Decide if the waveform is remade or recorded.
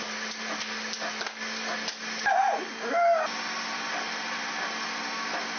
recorded